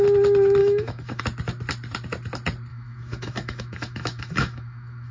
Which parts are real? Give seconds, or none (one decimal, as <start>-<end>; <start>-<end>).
0.0-0.6; 1.2-2.7